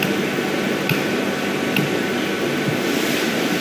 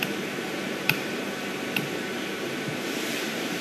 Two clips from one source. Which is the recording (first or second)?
first